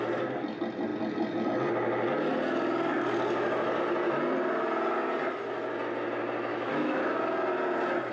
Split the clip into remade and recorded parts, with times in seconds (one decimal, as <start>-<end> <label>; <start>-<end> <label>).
0.0-6.5 recorded; 6.5-7.0 remade; 7.0-8.1 recorded